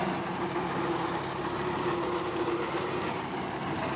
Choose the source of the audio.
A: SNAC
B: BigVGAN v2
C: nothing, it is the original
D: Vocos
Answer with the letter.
C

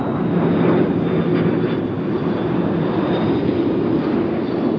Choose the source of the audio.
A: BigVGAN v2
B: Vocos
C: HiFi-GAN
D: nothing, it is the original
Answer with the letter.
D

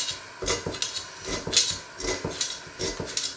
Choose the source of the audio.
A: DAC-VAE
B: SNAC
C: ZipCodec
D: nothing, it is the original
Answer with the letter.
D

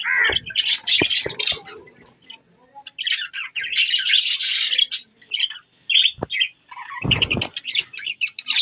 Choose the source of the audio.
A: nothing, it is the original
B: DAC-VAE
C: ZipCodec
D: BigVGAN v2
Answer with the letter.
A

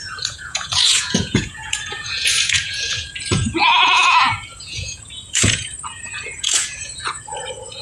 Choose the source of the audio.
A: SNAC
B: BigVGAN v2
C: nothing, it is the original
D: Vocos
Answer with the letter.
D